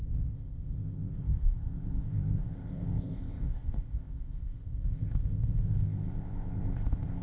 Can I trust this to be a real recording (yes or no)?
no